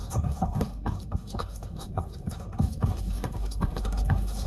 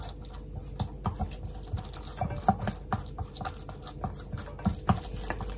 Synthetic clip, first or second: first